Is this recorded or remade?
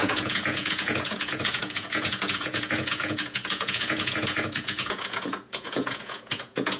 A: remade